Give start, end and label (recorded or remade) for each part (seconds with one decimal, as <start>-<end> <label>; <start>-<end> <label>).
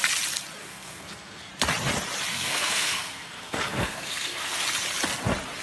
0.0-0.6 recorded; 0.6-1.5 remade; 1.5-2.3 recorded; 2.3-4.6 remade; 4.6-5.6 recorded